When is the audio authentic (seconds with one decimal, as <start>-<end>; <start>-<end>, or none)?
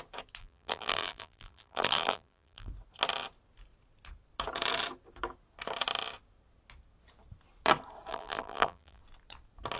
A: 0.0-0.4; 2.7-8.1; 9.0-9.8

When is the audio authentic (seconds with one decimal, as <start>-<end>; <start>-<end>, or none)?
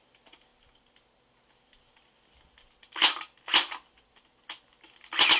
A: 0.0-5.4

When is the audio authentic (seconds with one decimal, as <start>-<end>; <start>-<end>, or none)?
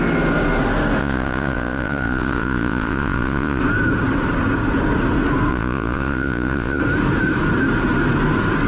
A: 0.0-1.0; 3.6-5.5; 6.8-8.7